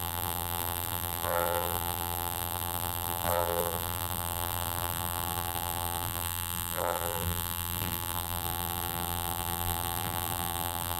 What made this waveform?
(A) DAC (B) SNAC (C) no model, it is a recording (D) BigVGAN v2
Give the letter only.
D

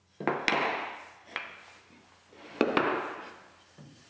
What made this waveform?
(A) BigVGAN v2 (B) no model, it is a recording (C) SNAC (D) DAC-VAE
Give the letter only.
B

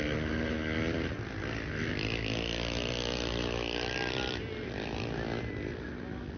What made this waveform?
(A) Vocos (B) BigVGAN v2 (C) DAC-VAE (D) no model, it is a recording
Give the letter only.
D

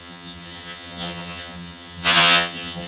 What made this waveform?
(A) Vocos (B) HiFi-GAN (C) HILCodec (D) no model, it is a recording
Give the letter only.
B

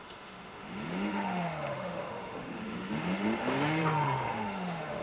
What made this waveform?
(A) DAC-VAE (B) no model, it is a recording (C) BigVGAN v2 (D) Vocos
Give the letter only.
A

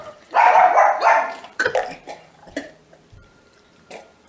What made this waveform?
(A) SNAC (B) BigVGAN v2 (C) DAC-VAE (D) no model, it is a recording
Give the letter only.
B